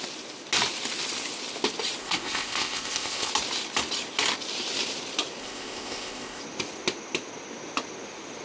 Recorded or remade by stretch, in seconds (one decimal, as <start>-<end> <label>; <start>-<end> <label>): 0.0-2.0 recorded; 2.0-3.3 remade; 3.3-5.4 recorded; 5.4-6.4 remade; 6.4-8.4 recorded